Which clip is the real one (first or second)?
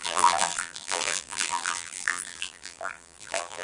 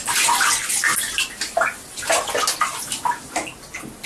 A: second